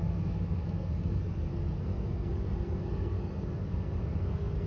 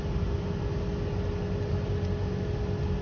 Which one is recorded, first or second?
second